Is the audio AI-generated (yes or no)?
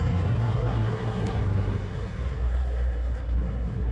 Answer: yes